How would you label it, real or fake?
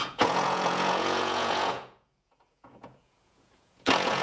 fake